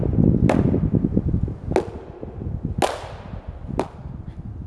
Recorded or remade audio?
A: recorded